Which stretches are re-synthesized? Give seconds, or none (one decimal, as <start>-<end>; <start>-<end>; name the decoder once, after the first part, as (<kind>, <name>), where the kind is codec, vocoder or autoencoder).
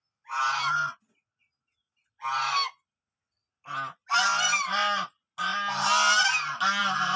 none